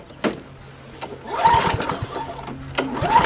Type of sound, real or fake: real